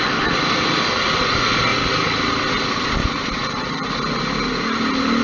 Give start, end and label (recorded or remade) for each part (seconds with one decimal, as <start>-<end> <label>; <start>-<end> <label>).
0.0-3.0 recorded; 3.0-3.9 remade; 3.9-5.2 recorded